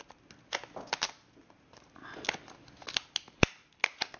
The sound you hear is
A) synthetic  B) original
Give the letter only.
B